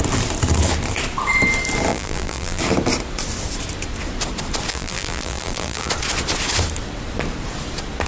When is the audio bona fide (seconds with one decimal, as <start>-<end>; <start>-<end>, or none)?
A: 0.0-1.9; 2.6-4.7; 5.9-8.1